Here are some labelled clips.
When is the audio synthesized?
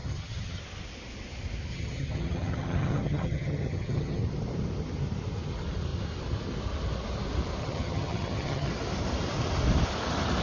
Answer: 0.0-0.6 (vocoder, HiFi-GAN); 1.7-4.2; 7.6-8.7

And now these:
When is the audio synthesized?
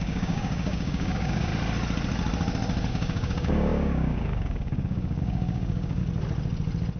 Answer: 0.0-1.5 (codec, DAC); 2.9-6.0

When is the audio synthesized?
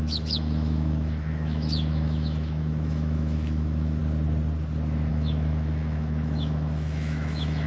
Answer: 0.0-4.0 (autoencoder, DAC-VAE); 5.1-7.7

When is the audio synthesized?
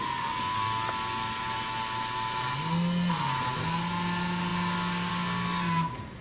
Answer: none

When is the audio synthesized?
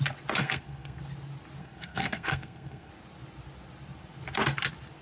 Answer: 0.4-1.0 (codec, SNAC); 1.6-2.9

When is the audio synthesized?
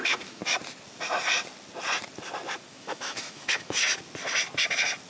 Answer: 0.0-0.4 (autoencoder, DAC-VAE); 2.7-3.8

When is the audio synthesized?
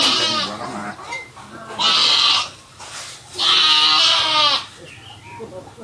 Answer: 0.8-1.3 (vocoder, BigVGAN v2)